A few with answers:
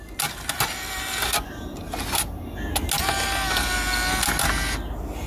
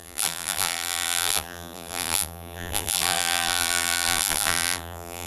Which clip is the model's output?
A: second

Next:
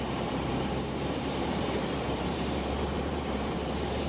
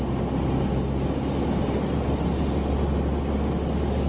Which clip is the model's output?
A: first